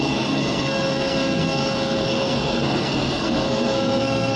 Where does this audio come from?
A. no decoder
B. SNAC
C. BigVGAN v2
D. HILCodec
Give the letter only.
B